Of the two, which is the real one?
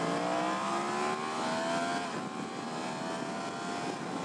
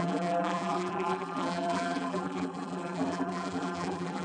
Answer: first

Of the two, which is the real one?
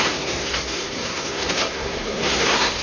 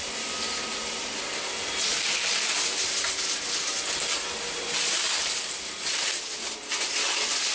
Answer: second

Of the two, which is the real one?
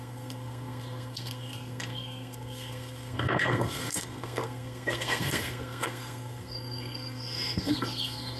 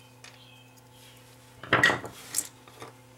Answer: second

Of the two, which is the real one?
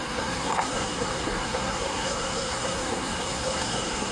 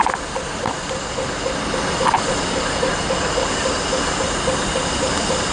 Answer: second